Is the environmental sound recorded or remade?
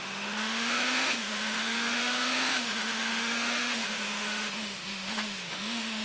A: remade